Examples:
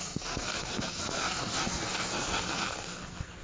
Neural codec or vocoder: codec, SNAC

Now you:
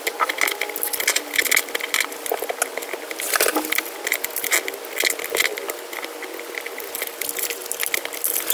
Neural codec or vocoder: none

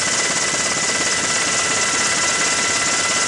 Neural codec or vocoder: none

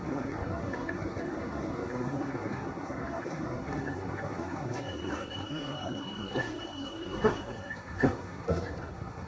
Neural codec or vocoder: codec, SNAC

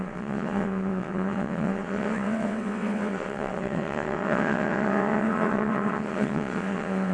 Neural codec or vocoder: vocoder, WaveNeXt